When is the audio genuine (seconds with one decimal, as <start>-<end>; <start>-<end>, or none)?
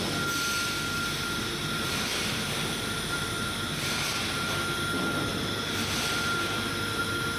0.0-1.4; 4.5-5.3; 7.0-7.4